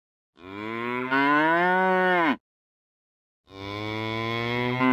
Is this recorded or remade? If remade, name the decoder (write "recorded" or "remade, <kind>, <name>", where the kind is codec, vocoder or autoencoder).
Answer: recorded